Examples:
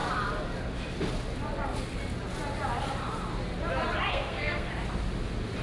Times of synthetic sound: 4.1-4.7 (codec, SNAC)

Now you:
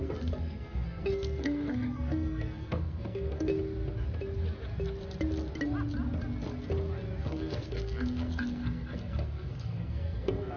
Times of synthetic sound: 0.0-3.5 (codec, SNAC); 7.2-10.6

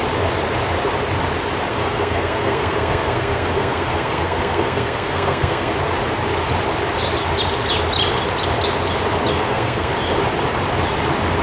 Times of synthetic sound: 1.7-5.7 (codec, SNAC); 9.3-9.9

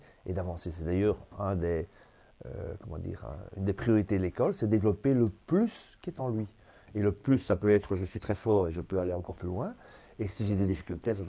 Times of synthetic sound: 7.2-9.3 (codec, SNAC); 10.3-11.3

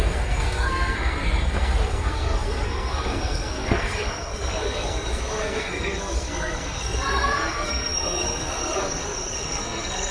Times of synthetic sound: 0.0-10.1 (codec, SNAC)

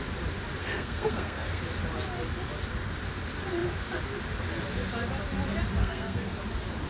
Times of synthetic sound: 0.6-1.6 (codec, SNAC); 5.8-6.3